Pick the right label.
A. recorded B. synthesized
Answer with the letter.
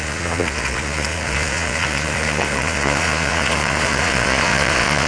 B